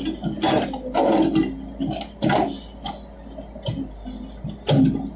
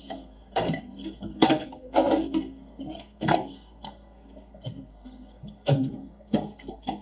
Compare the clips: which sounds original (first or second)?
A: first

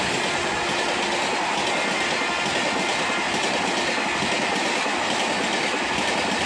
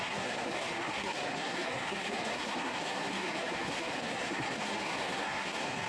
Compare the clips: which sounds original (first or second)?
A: first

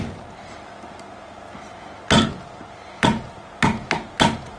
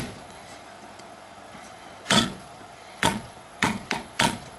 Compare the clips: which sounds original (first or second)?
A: first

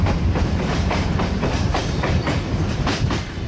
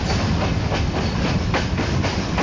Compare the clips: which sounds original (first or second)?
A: second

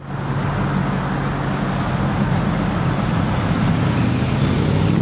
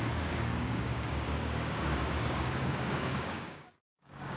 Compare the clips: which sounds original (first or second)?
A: first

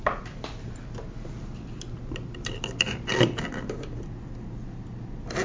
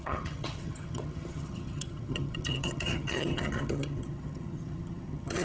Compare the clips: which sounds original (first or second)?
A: first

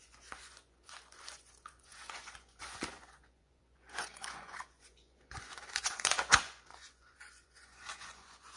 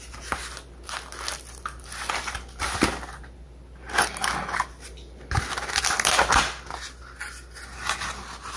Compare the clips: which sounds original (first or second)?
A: second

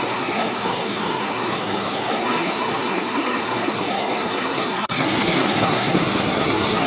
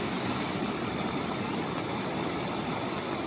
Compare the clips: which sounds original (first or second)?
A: second